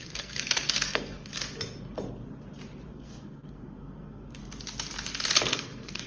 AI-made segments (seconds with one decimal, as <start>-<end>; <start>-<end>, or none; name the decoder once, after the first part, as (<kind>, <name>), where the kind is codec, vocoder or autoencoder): 0.0-1.3 (codec, SNAC); 2.9-4.4; 5.4-6.1